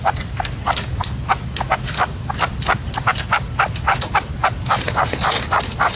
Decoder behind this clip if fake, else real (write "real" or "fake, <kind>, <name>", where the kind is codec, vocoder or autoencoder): real